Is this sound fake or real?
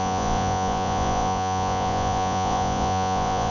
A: fake